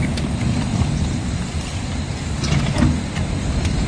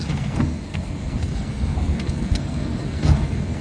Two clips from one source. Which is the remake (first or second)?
second